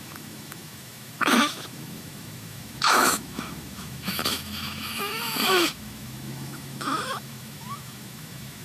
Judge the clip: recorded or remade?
remade